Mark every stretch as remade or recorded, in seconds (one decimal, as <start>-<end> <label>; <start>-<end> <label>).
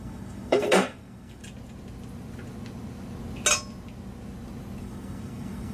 0.0-1.4 remade; 1.4-4.8 recorded; 4.8-5.7 remade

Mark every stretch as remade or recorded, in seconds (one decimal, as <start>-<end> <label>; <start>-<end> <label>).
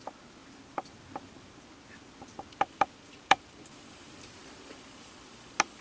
0.0-5.8 recorded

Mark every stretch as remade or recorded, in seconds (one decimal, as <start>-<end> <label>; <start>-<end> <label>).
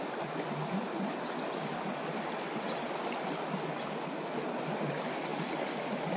0.0-6.2 recorded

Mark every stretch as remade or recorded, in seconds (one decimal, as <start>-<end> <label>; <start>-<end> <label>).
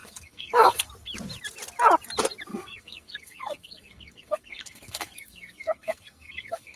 0.0-0.9 remade; 0.9-2.5 recorded; 2.5-6.8 remade